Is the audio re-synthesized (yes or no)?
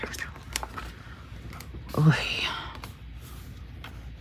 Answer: no